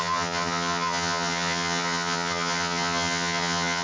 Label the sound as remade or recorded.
remade